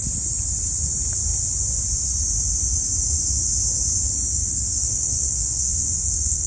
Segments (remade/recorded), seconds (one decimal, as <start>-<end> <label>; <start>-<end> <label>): 0.0-4.4 recorded; 4.4-6.5 remade